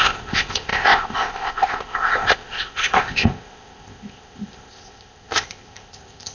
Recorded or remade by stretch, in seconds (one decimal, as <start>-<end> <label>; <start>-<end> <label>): 0.0-6.3 remade